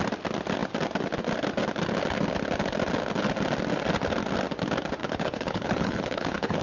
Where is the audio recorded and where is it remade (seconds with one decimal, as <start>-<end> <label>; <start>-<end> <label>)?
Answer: 0.0-5.0 recorded; 5.0-6.6 remade